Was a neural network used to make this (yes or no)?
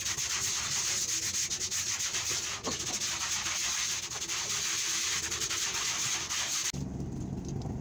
no